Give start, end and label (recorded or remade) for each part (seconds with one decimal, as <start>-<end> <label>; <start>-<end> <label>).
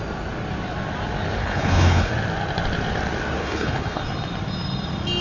0.0-1.4 recorded; 1.4-2.1 remade; 2.1-3.4 recorded; 3.4-4.0 remade; 4.0-5.2 recorded